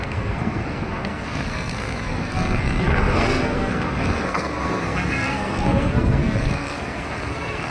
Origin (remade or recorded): remade